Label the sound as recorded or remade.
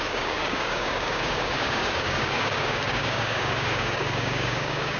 remade